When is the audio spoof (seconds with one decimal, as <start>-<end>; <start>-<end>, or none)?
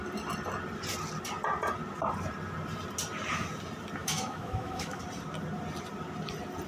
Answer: 4.0-5.0